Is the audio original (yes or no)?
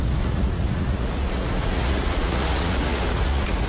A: no